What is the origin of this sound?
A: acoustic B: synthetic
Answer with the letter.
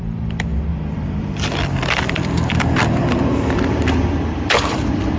B